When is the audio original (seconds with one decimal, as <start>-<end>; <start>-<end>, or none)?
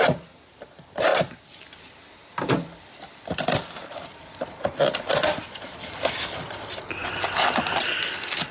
0.0-8.5